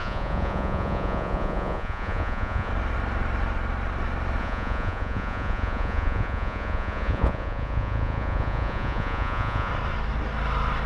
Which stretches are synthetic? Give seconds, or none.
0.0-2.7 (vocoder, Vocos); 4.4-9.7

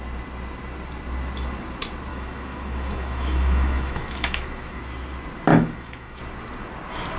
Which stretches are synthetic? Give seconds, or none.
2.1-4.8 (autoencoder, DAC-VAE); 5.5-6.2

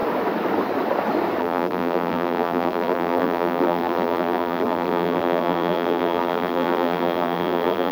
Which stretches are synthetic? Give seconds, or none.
1.4-7.9 (vocoder, BigVGAN v2)